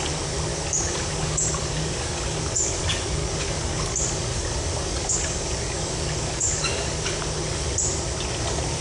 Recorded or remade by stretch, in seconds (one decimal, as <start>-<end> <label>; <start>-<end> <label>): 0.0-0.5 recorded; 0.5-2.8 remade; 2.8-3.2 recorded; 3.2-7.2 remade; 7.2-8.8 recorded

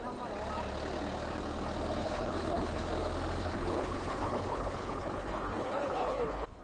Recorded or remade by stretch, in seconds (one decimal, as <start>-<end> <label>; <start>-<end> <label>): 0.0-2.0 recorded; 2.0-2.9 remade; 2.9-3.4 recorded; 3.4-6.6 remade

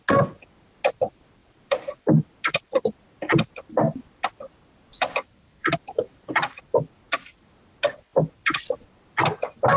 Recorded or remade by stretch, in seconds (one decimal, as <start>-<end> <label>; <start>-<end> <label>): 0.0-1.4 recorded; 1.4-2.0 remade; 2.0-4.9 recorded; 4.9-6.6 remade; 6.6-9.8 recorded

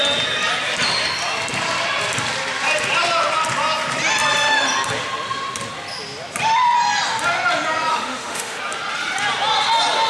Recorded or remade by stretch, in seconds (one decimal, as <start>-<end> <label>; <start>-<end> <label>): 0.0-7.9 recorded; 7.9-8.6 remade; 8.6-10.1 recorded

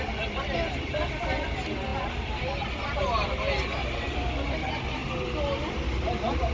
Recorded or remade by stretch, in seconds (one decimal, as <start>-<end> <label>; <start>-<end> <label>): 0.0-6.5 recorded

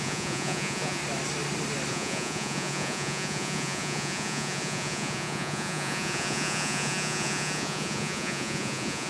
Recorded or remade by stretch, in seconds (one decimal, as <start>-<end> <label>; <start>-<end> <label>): 0.0-1.0 remade; 1.0-1.9 recorded; 1.9-9.1 remade

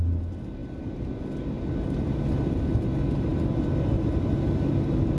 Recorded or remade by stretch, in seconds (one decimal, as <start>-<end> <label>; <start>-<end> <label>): 0.0-5.2 recorded

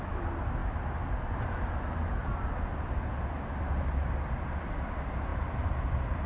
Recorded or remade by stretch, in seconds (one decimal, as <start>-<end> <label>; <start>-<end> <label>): 0.0-6.3 recorded